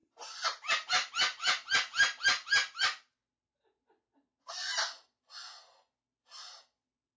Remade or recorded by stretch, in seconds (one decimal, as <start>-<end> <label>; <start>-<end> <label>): 0.0-0.9 remade; 0.9-7.2 recorded